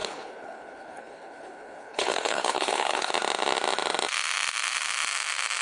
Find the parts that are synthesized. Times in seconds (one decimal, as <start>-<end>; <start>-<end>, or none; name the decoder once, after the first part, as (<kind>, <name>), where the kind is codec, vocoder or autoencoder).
0.0-3.1 (codec, HILCodec)